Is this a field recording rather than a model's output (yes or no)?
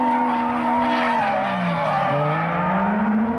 yes